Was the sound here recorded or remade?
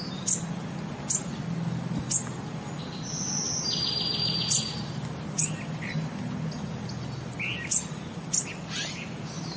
recorded